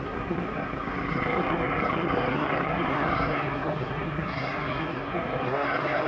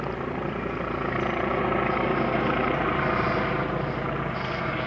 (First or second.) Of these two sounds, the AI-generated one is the first